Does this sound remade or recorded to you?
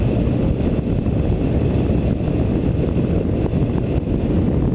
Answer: recorded